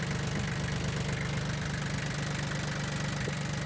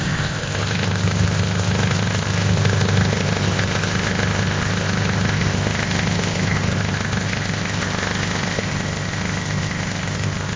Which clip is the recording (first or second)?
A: first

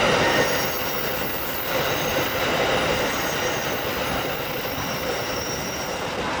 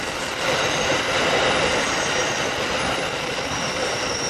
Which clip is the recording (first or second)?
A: first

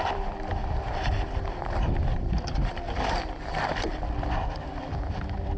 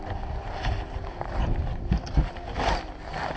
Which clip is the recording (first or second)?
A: second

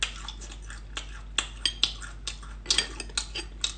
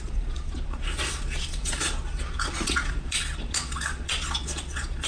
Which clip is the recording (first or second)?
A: first